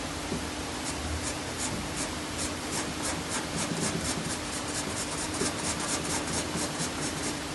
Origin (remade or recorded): remade